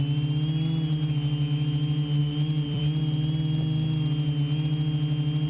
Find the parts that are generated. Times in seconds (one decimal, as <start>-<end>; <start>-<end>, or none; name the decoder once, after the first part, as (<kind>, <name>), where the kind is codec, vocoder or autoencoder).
2.2-2.8 (vocoder, BigVGAN v2)